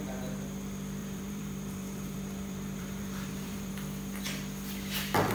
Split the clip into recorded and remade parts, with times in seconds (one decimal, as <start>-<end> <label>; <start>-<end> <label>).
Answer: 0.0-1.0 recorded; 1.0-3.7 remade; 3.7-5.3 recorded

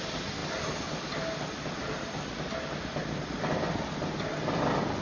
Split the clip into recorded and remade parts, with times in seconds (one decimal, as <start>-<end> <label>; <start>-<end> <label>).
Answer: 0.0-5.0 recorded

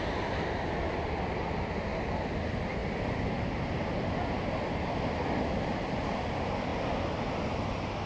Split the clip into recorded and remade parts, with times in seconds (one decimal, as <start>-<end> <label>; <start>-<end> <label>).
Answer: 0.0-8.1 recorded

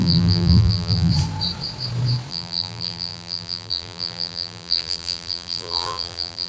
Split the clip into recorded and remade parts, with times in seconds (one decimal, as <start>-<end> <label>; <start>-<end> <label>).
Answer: 0.0-1.1 remade; 1.1-2.3 recorded; 2.3-6.5 remade

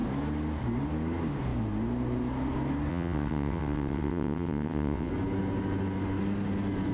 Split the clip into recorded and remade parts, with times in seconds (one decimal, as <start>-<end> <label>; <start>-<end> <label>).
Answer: 0.0-2.9 recorded; 2.9-5.1 remade; 5.1-6.9 recorded

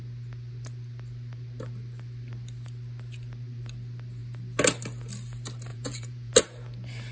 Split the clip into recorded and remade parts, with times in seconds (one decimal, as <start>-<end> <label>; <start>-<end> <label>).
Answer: 0.0-5.7 recorded; 5.7-6.3 remade; 6.3-7.1 recorded

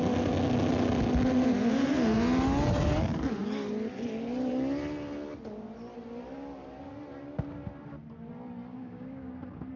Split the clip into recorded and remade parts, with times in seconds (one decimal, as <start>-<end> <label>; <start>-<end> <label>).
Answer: 0.0-8.7 recorded; 8.7-9.3 remade; 9.3-9.8 recorded